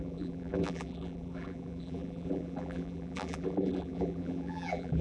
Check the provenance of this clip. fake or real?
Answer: fake